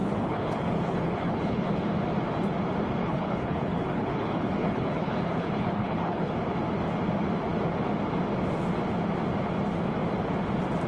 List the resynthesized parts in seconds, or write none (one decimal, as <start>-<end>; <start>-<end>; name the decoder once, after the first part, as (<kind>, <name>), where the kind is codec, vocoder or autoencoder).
0.0-1.8 (codec, HILCodec); 3.0-6.3